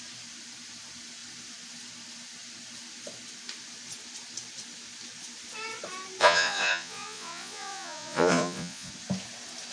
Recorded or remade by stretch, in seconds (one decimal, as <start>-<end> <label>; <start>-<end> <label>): 0.0-6.2 recorded; 6.2-8.9 remade; 8.9-9.7 recorded